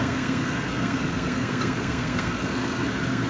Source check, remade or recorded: remade